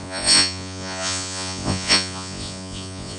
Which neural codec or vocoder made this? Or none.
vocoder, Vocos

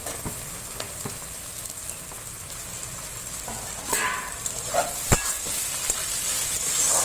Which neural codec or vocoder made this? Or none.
none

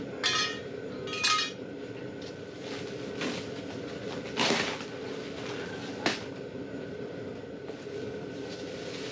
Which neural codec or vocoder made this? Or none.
none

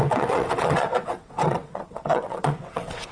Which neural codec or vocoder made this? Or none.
vocoder, WaveNeXt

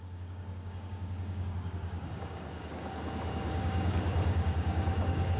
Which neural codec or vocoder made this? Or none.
codec, DAC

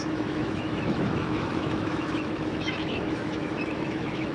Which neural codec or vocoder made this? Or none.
autoencoder, DAC-VAE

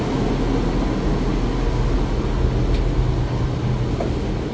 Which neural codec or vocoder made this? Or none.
none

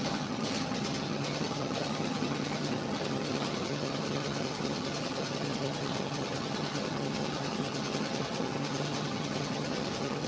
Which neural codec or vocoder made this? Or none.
vocoder, HiFi-GAN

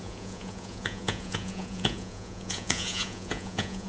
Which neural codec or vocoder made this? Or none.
vocoder, Vocos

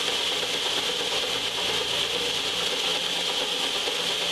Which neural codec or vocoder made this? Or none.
none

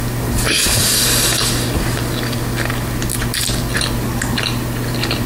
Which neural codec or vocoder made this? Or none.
none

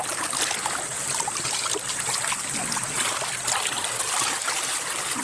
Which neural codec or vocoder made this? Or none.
none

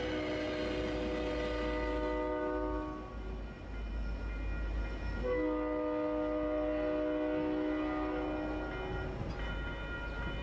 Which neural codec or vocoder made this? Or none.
none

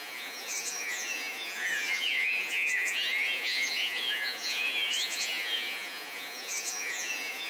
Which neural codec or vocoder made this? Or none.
vocoder, Vocos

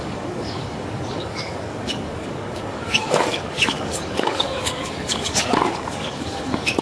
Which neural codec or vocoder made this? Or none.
codec, DAC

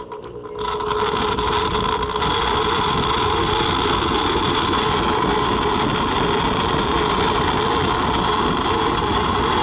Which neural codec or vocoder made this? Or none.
none